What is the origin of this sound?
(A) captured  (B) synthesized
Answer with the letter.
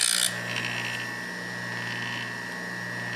A